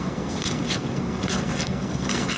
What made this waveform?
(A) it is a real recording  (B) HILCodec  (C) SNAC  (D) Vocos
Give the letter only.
C